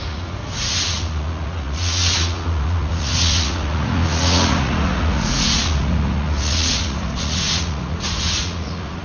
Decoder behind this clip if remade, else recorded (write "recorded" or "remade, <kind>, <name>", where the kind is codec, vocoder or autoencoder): remade, vocoder, Vocos